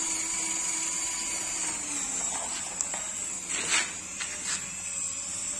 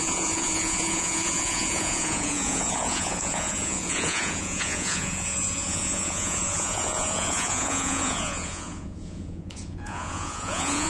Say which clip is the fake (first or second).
second